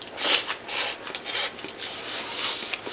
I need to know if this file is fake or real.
fake